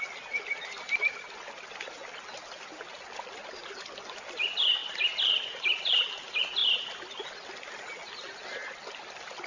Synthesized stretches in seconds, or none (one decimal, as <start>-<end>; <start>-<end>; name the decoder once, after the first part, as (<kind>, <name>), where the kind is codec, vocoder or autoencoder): none